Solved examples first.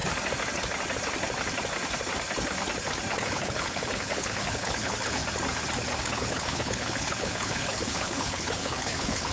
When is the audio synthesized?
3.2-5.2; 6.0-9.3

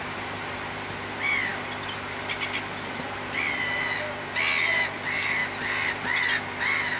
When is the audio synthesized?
none

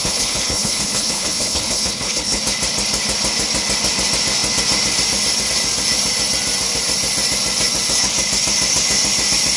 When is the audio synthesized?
0.0-2.4

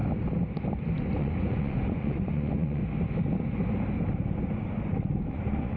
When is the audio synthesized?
1.1-2.8; 5.3-5.8